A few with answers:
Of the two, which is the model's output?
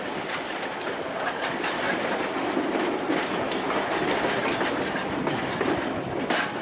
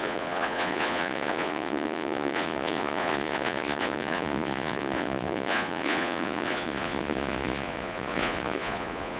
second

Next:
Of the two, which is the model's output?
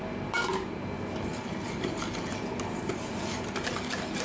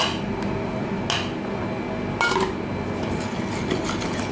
first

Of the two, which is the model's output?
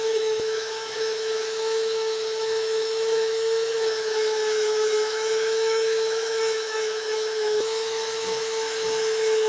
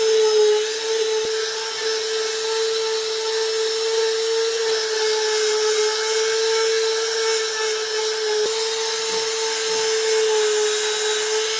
first